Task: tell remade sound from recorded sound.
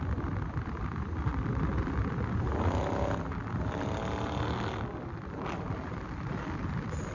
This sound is recorded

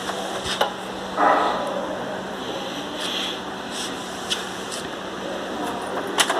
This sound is recorded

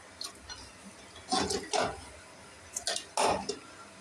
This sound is recorded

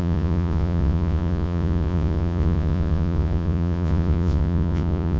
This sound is remade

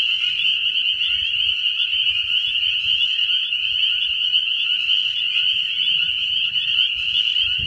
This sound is remade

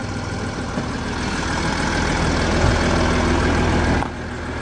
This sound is recorded